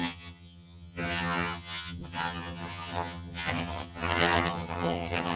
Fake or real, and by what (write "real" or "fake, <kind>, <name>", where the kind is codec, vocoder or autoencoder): fake, vocoder, HiFi-GAN